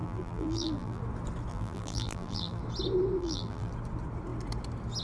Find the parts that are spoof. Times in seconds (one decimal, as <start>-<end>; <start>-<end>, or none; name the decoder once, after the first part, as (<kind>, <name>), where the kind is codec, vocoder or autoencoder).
0.0-1.0 (vocoder, BigVGAN v2); 1.5-2.6; 3.2-3.7